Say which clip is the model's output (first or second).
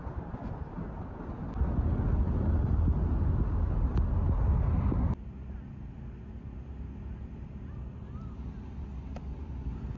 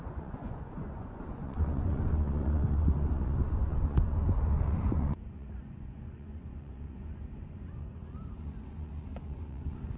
second